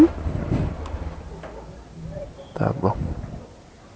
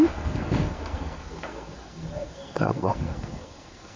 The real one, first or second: first